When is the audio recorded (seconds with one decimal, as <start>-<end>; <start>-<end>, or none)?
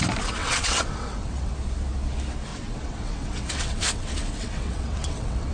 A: 0.0-0.4; 1.5-2.5